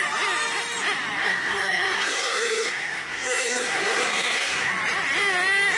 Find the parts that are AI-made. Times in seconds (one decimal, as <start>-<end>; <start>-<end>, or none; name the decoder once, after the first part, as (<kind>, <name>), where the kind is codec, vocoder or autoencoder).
1.2-4.7 (codec, SNAC)